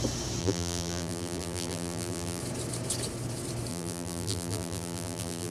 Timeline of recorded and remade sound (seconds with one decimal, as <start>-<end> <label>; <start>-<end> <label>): 0.0-0.4 recorded; 0.4-2.4 remade; 2.4-3.7 recorded; 3.7-5.5 remade